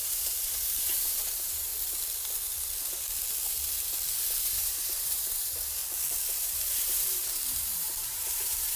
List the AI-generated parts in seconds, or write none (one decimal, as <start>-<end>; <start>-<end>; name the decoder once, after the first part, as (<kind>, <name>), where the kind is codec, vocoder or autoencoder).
0.0-1.7 (vocoder, BigVGAN v2); 4.4-5.8; 6.4-8.8